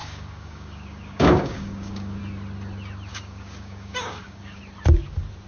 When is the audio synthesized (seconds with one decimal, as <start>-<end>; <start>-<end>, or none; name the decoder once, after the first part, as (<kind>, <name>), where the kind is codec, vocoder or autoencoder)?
0.0-2.2 (codec, DAC); 3.1-4.6